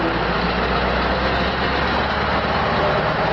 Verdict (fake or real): real